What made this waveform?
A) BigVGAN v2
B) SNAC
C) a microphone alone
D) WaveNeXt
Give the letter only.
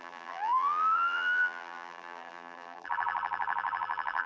A